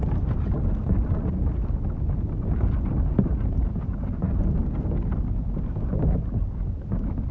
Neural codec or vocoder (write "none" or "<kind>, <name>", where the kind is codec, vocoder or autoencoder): none